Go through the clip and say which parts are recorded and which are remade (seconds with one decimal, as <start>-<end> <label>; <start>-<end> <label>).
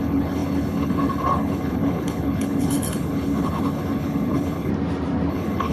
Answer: 0.0-4.7 remade; 4.7-5.3 recorded; 5.3-5.7 remade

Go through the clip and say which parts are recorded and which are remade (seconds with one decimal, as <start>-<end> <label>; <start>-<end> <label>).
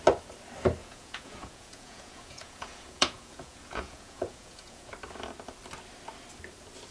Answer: 0.0-0.8 recorded; 0.8-4.9 remade; 4.9-6.9 recorded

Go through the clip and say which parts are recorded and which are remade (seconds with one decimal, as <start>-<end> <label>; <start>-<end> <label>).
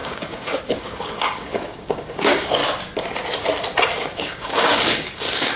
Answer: 0.0-2.6 remade; 2.6-4.0 recorded; 4.0-5.6 remade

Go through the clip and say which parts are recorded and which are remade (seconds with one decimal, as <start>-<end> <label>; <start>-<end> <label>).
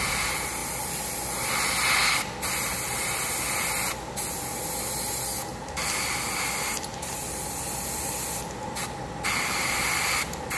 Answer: 0.0-10.6 recorded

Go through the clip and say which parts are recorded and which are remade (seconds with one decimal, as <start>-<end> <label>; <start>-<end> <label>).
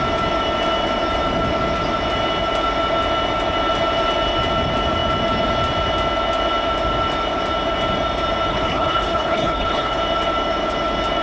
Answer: 0.0-8.5 recorded; 8.5-10.0 remade; 10.0-11.2 recorded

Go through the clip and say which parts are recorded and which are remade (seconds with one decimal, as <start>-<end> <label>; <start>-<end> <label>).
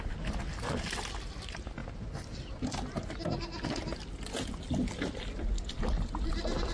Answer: 0.0-6.7 recorded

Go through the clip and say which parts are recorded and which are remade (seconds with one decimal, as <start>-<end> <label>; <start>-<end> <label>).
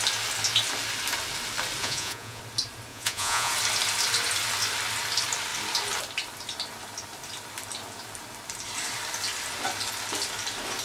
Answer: 0.0-1.8 recorded; 1.8-2.4 remade; 2.4-2.9 recorded; 2.9-3.5 remade; 3.5-10.8 recorded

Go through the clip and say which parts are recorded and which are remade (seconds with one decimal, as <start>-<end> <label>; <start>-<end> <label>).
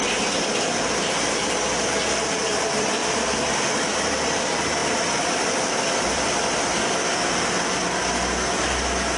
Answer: 0.0-3.0 recorded; 3.0-3.6 remade; 3.6-4.8 recorded; 4.8-7.0 remade; 7.0-9.2 recorded